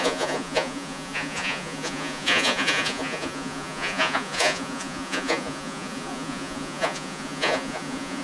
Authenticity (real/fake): fake